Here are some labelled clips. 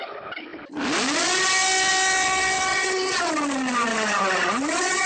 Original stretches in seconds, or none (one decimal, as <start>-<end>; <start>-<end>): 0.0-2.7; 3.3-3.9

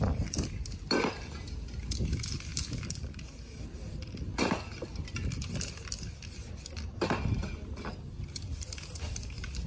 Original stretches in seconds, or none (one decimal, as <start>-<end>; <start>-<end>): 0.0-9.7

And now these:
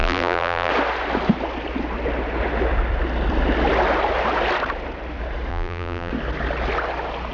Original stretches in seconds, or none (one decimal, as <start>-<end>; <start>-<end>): 0.7-5.5; 6.1-7.3

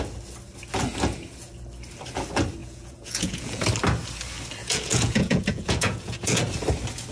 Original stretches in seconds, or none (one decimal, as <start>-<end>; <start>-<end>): 0.0-2.6; 3.6-4.6; 6.4-7.1

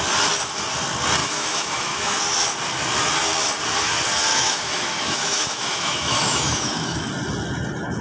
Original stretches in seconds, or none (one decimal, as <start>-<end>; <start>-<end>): 0.0-1.2; 2.2-4.3; 7.1-8.0

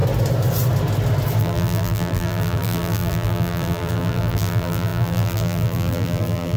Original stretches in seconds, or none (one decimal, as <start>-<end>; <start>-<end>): 0.0-1.4

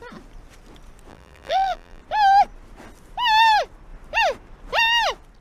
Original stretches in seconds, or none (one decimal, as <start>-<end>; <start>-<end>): 0.0-1.1; 2.0-5.4

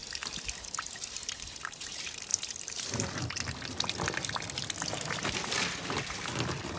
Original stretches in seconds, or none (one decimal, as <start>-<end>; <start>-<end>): 0.0-6.8